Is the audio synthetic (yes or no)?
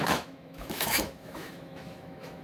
yes